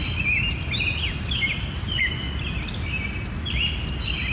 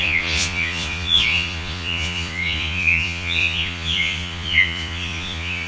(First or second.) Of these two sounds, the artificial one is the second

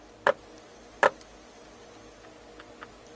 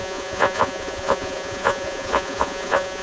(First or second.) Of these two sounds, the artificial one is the second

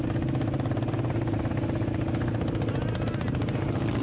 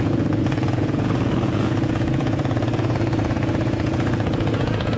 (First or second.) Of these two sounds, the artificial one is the second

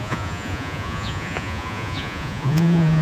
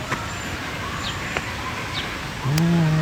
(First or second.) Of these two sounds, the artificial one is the first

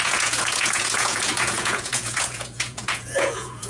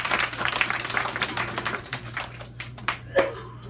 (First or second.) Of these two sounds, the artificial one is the first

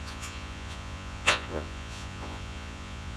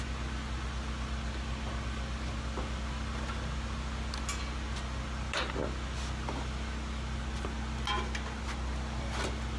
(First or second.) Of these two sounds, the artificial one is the first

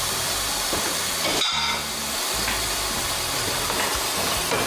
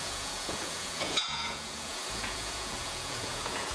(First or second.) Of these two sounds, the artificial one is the second